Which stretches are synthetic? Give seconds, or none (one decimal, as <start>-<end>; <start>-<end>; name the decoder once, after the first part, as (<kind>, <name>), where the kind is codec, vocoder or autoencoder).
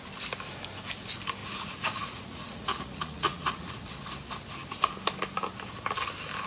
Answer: 1.4-3.9 (vocoder, Vocos)